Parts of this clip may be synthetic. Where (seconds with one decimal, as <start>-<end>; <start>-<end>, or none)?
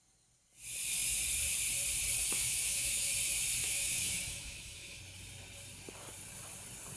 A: 2.3-3.1; 3.6-5.0